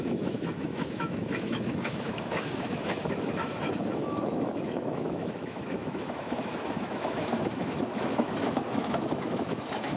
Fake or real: fake